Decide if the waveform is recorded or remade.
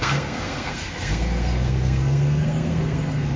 remade